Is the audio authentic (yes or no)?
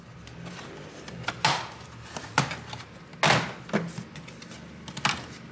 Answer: yes